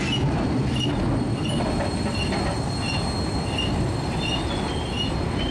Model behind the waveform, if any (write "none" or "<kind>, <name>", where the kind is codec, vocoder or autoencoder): none